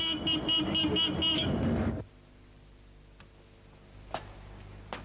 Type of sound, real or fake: real